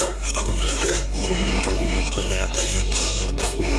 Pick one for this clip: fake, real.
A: fake